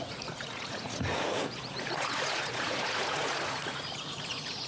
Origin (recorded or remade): remade